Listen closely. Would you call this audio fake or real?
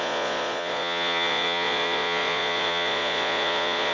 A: fake